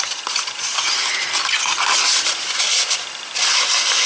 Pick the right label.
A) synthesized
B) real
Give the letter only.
B